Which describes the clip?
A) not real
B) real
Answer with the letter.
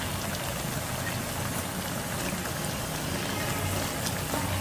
B